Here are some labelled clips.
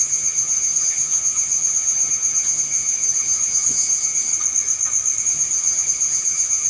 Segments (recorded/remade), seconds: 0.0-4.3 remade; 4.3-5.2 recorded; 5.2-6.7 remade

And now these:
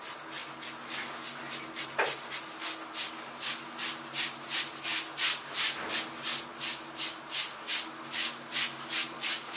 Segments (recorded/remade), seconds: 0.0-9.6 recorded

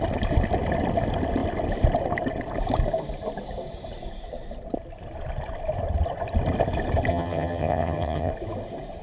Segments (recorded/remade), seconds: 0.0-7.1 recorded; 7.1-8.3 remade; 8.3-9.0 recorded

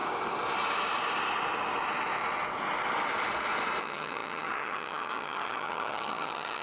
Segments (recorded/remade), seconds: 0.0-3.8 recorded; 3.8-6.6 remade

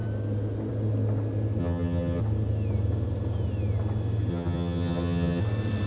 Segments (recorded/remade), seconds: 0.0-1.6 recorded; 1.6-2.2 remade; 2.2-4.3 recorded; 4.3-5.4 remade; 5.4-5.9 recorded

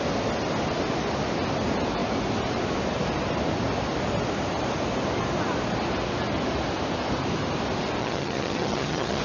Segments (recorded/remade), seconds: 0.0-8.0 recorded; 8.0-9.2 remade